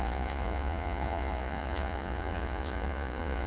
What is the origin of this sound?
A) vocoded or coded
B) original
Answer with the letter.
A